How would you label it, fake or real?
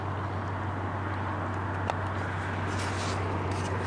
real